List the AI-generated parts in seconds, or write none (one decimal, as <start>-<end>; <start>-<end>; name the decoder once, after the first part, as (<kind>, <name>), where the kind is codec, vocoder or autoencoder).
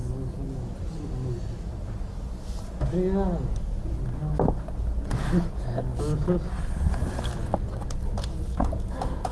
none